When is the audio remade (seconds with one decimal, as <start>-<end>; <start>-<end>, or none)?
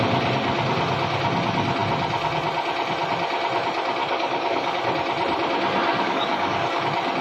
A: 4.0-4.8; 5.9-6.8